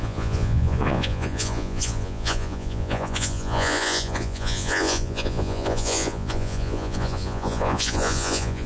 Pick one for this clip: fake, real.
fake